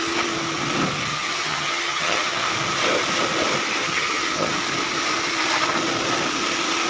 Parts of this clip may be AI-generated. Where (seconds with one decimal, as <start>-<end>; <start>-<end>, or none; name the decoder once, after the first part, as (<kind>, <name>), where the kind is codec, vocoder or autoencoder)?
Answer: 1.1-2.5 (vocoder, HiFi-GAN); 3.8-4.5

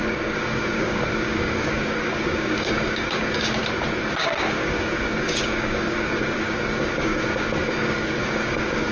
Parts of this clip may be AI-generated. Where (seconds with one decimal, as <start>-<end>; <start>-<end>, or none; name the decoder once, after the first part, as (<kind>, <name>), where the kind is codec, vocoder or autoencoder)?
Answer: 0.0-3.6 (codec, DAC); 4.1-8.9

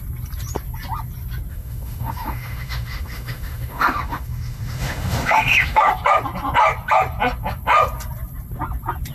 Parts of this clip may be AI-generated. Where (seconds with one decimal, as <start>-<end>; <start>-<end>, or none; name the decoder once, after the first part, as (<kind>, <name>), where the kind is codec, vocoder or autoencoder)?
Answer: 1.5-5.9 (autoencoder, DAC-VAE)

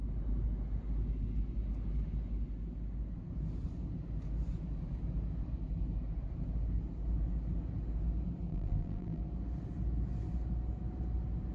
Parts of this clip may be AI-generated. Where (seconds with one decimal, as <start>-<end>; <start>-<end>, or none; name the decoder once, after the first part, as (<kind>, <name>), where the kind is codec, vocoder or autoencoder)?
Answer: 8.5-9.2 (vocoder, BigVGAN v2)

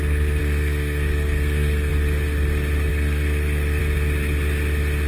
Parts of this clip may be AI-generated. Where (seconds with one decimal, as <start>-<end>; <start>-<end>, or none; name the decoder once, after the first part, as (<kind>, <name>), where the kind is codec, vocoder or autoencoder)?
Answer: 0.4-1.9 (codec, SNAC); 2.9-3.8

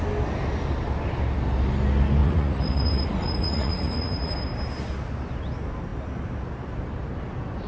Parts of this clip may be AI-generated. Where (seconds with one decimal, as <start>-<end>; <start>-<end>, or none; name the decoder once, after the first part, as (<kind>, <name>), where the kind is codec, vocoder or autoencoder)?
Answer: 2.2-4.3 (vocoder, Vocos)

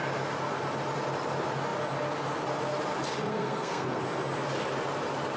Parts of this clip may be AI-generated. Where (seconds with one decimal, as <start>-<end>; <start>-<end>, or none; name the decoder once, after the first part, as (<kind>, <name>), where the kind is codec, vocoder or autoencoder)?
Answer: 3.3-4.0 (codec, SNAC)